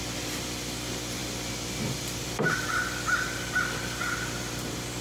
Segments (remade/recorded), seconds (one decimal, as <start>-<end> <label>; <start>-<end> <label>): 0.0-5.0 recorded